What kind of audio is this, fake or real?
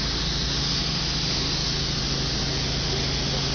real